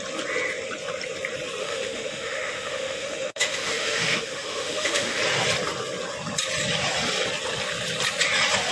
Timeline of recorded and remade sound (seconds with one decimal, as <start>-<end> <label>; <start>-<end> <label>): 0.0-1.6 recorded; 1.6-5.2 remade; 5.2-8.7 recorded